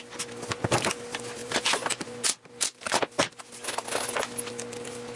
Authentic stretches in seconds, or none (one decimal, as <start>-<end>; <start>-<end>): 0.0-1.4; 3.0-5.2